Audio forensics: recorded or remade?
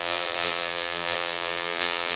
remade